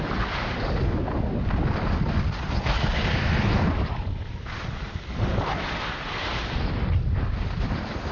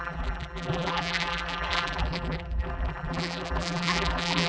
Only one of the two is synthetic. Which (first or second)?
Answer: second